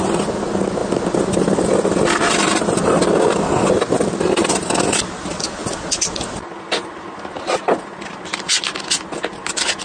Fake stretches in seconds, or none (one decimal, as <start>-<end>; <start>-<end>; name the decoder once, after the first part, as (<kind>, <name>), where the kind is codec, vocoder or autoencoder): none